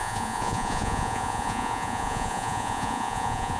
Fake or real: fake